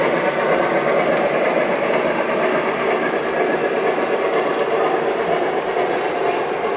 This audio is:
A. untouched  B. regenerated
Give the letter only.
A